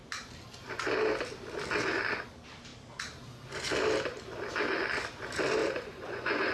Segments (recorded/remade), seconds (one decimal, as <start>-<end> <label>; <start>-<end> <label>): 0.0-5.6 recorded; 5.6-6.5 remade